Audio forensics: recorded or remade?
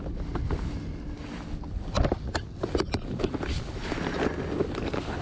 recorded